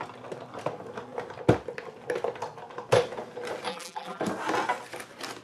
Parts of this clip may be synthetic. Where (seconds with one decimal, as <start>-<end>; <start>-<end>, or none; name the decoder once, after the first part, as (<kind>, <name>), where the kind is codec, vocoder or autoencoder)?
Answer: 3.7-4.2 (vocoder, BigVGAN v2)

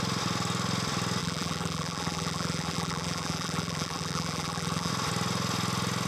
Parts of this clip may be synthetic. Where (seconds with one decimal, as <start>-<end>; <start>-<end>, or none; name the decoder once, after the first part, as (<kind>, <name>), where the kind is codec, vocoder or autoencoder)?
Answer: 1.2-4.9 (vocoder, BigVGAN v2)

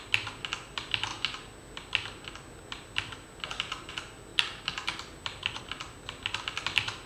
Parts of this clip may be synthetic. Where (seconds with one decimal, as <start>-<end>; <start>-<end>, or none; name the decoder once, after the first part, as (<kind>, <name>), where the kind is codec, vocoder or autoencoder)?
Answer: 4.3-5.6 (vocoder, BigVGAN v2)

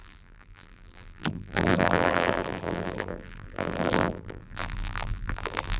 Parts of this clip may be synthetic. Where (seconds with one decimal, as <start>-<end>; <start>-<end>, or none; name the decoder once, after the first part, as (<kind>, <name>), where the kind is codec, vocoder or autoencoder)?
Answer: 0.0-5.8 (vocoder, BigVGAN v2)

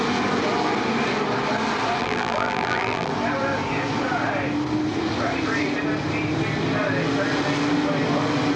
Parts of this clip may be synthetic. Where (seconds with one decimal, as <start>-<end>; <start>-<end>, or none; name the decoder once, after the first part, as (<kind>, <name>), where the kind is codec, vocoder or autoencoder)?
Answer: 2.0-3.1 (vocoder, BigVGAN v2)

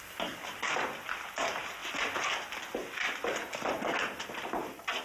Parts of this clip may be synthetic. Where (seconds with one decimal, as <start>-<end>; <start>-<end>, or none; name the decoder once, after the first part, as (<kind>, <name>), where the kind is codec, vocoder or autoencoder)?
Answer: none

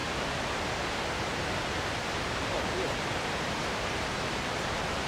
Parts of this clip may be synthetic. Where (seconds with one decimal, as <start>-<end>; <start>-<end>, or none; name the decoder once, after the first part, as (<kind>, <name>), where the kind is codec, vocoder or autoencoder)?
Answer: 1.0-5.1 (vocoder, BigVGAN v2)

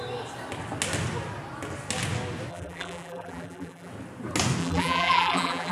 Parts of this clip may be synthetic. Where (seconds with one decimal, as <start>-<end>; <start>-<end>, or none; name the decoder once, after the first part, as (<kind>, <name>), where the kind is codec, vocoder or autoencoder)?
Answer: 2.5-3.9 (vocoder, BigVGAN v2); 4.6-5.7